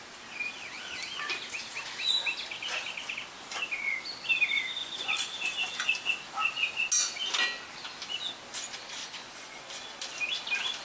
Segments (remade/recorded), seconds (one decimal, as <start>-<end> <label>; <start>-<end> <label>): 0.0-4.8 recorded; 4.8-5.4 remade; 5.4-9.0 recorded; 9.0-9.9 remade; 9.9-10.8 recorded